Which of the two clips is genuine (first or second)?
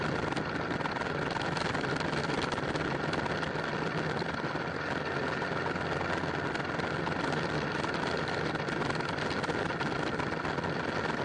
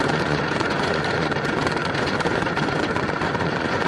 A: first